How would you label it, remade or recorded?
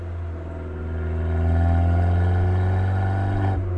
recorded